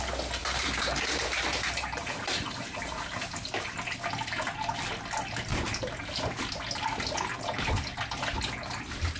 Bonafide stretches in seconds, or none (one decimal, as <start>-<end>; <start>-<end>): 0.0-0.4; 3.7-9.2

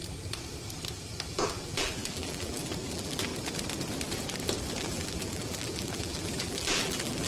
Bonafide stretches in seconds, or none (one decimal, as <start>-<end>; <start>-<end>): 0.0-1.3; 3.3-4.8